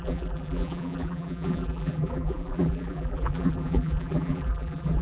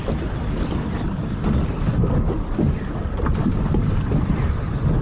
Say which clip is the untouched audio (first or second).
second